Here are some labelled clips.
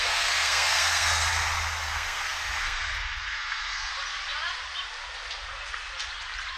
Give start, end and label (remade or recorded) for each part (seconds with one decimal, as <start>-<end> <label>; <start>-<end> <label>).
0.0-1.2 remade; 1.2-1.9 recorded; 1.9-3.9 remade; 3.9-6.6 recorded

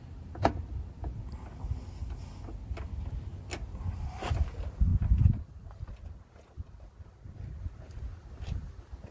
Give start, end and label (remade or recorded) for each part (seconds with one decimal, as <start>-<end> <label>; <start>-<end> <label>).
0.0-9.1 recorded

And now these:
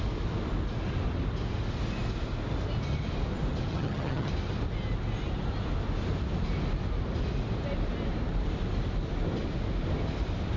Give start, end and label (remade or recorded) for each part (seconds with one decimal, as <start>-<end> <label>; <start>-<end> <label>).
0.0-3.7 recorded; 3.7-4.3 remade; 4.3-10.6 recorded

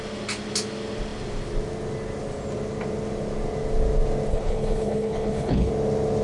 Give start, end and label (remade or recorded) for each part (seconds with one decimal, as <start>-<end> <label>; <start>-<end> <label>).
0.0-4.3 recorded; 4.3-5.7 remade; 5.7-6.2 recorded